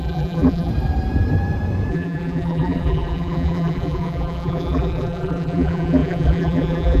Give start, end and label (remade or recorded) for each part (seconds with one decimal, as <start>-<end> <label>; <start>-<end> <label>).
0.0-0.7 remade; 0.7-1.9 recorded; 1.9-7.0 remade